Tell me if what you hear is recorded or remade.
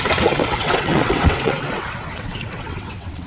remade